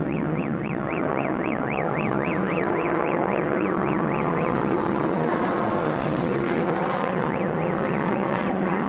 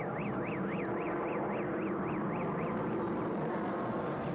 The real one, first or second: second